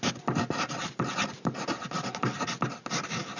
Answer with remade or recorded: recorded